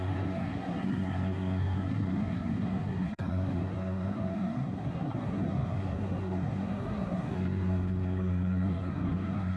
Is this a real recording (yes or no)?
no